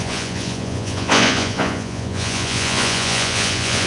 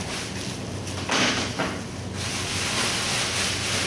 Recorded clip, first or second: second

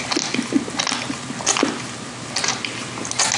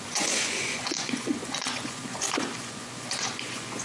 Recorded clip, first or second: first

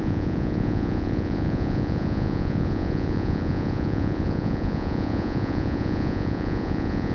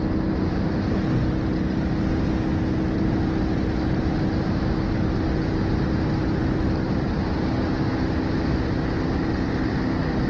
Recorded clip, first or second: second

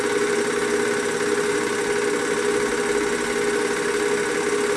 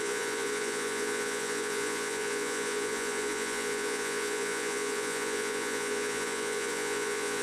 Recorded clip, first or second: first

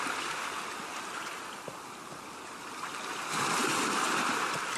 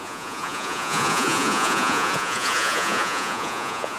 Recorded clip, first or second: first